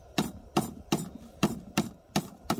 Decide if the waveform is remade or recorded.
remade